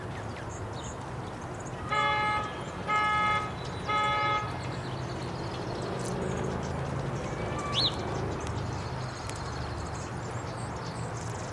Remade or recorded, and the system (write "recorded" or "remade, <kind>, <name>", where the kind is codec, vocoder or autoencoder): recorded